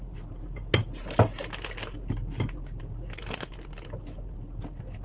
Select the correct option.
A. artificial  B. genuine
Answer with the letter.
B